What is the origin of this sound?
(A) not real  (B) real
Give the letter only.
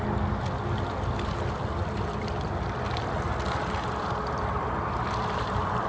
B